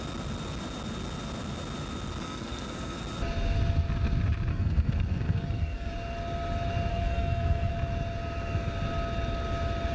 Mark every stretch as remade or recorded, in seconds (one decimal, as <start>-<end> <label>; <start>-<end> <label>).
0.0-2.2 recorded; 2.2-3.0 remade; 3.0-4.5 recorded; 4.5-5.9 remade; 5.9-6.9 recorded; 6.9-7.7 remade; 7.7-9.9 recorded